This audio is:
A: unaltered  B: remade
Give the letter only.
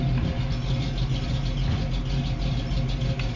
A